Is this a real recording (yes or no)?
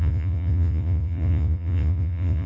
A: no